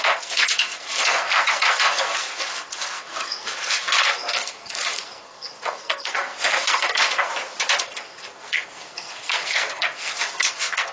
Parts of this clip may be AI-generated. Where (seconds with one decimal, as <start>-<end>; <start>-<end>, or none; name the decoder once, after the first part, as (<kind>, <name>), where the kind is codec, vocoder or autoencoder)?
0.0-7.3 (codec, SNAC); 7.8-10.9